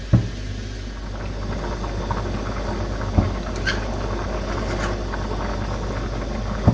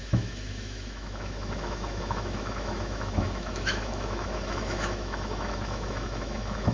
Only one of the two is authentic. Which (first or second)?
first